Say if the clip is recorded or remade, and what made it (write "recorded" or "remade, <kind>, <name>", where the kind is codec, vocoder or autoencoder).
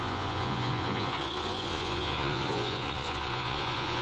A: remade, vocoder, Vocos